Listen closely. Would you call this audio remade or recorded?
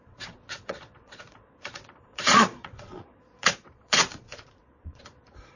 remade